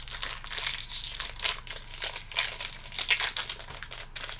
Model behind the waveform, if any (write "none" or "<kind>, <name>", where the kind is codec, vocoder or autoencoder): none